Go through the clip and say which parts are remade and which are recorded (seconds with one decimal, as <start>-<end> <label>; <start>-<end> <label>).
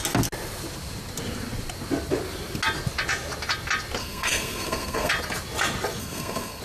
0.0-4.0 recorded; 4.0-5.1 remade; 5.1-6.0 recorded; 6.0-6.6 remade